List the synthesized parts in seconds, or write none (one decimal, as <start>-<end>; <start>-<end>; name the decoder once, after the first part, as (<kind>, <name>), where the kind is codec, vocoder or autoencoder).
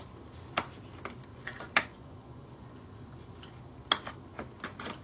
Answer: 1.3-3.6 (vocoder, Vocos)